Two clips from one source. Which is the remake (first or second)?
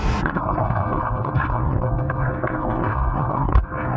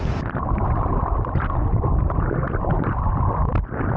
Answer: first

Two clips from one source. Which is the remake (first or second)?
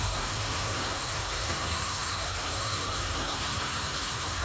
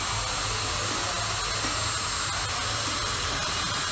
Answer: first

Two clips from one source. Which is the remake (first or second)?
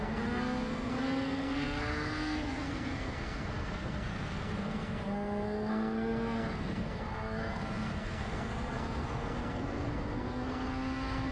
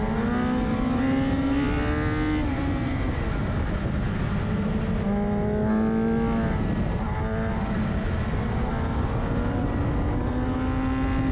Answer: first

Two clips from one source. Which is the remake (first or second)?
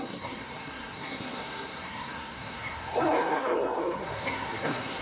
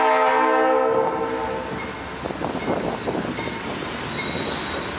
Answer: first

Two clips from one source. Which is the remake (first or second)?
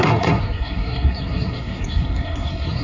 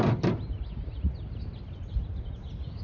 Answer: first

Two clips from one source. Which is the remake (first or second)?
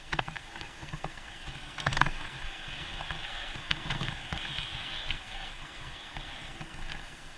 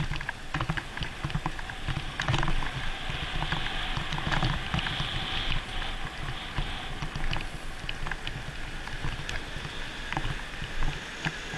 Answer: first